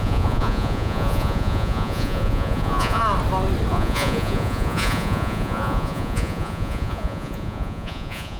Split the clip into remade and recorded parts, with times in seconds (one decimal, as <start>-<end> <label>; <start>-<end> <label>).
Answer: 0.0-3.0 remade; 3.0-3.7 recorded; 3.7-8.4 remade